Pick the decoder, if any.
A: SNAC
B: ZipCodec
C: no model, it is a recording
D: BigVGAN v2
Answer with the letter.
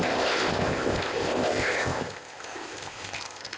B